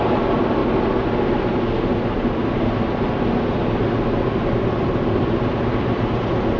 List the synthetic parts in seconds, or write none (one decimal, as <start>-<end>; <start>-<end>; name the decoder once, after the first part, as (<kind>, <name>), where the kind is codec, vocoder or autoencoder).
0.0-0.6 (vocoder, BigVGAN v2); 4.6-6.6